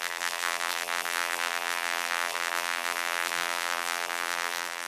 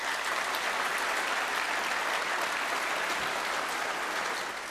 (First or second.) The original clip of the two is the second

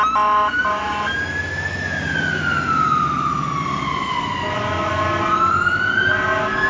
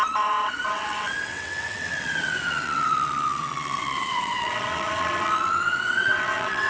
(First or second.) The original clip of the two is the first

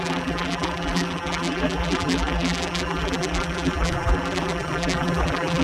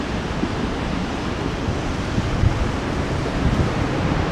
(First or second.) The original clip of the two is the second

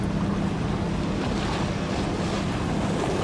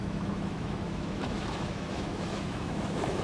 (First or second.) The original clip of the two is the first